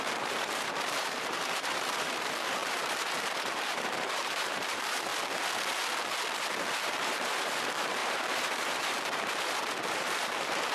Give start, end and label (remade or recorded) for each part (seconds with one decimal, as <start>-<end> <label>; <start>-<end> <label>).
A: 0.0-5.1 remade; 5.1-6.7 recorded; 6.7-10.7 remade